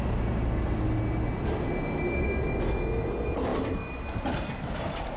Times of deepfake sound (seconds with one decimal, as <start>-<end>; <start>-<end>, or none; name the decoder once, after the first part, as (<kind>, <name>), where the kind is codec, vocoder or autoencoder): none